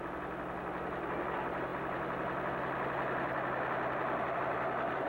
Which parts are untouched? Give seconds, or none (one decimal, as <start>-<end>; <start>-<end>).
0.0-5.1